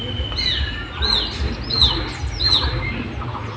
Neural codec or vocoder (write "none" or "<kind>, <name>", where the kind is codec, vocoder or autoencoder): none